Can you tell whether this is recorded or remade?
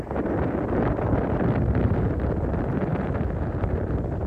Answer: recorded